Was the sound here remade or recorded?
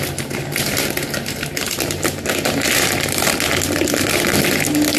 recorded